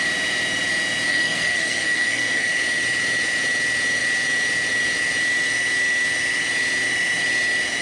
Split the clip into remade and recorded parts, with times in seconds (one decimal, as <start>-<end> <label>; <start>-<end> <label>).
0.0-1.1 recorded; 1.1-2.5 remade; 2.5-7.8 recorded